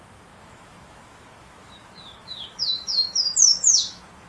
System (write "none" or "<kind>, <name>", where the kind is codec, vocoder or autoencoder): autoencoder, DAC-VAE